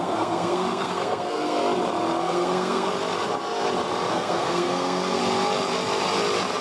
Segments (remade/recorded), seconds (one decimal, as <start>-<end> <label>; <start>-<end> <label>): 0.0-1.6 remade; 1.6-2.2 recorded; 2.2-2.9 remade; 2.9-4.1 recorded; 4.1-5.2 remade; 5.2-6.6 recorded